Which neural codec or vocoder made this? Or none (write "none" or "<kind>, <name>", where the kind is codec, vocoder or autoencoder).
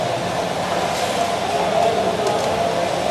none